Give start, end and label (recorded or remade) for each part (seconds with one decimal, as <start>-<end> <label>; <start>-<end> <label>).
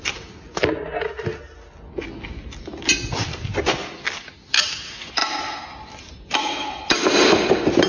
0.0-7.9 recorded